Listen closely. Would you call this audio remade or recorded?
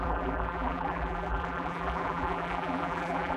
remade